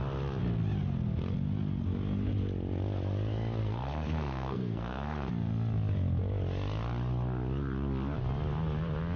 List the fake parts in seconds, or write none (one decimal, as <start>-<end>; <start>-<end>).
3.6-5.3